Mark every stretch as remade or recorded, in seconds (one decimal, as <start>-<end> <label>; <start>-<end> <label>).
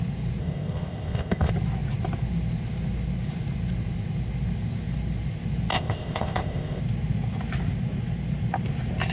0.0-0.4 recorded; 0.4-1.5 remade; 1.5-5.7 recorded; 5.7-6.8 remade; 6.8-9.1 recorded